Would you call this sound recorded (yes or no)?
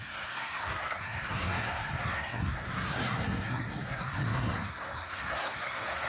no